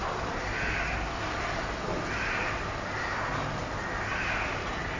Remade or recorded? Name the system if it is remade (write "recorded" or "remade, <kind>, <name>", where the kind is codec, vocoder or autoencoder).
recorded